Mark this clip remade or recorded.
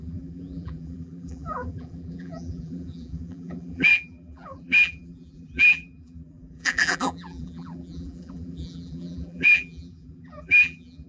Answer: remade